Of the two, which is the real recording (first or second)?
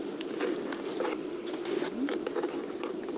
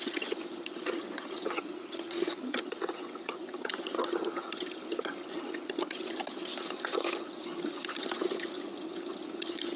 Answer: first